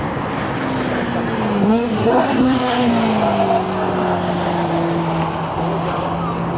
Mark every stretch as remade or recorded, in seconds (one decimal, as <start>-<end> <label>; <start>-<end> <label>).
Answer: 0.0-1.7 recorded; 1.7-2.9 remade; 2.9-6.6 recorded